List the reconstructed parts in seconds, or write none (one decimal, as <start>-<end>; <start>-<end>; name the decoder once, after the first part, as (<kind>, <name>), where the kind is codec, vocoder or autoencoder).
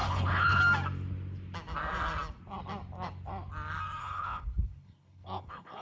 0.0-0.6 (codec, HILCodec); 4.0-5.8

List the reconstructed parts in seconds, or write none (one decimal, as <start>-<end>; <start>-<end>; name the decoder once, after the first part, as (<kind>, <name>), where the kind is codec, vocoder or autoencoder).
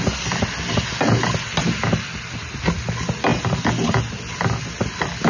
none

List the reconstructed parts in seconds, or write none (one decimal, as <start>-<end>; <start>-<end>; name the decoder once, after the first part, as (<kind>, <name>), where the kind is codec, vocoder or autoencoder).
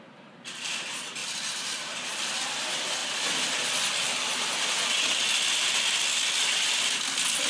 none